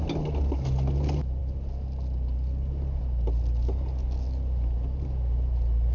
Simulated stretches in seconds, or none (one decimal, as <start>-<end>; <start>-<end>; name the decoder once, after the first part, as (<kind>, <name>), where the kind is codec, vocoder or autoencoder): none